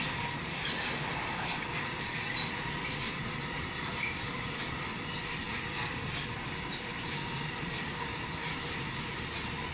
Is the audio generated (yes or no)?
no